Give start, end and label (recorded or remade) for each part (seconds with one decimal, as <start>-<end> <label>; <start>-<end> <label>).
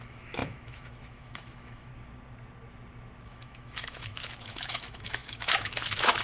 0.0-1.9 remade; 1.9-3.3 recorded; 3.3-6.2 remade